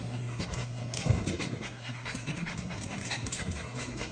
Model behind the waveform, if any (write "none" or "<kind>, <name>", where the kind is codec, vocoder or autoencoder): codec, SNAC